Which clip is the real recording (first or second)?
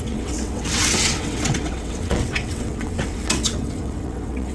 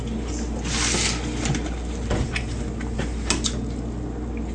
second